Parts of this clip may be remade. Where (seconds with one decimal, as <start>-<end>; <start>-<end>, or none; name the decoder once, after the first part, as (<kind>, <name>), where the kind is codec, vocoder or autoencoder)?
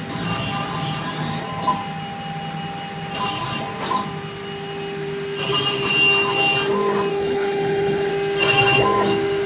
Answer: 7.1-8.1 (codec, HILCodec)